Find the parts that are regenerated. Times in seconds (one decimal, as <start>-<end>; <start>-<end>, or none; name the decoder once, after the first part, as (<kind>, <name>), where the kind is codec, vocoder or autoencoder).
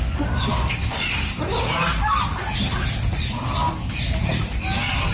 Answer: none